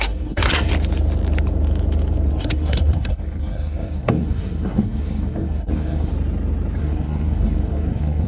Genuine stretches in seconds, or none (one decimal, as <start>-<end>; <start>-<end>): 0.7-2.3; 6.1-6.8